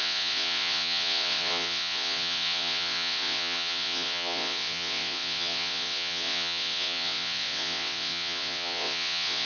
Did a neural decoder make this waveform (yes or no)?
yes